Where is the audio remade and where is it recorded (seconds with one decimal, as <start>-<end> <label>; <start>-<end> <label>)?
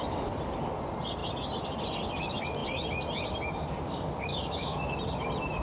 0.0-4.3 recorded; 4.3-5.0 remade; 5.0-5.6 recorded